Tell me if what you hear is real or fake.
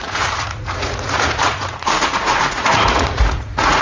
fake